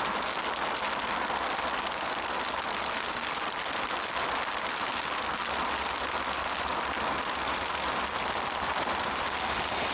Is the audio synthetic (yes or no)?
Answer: no